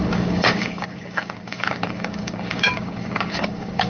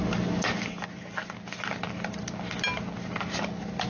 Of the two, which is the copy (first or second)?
first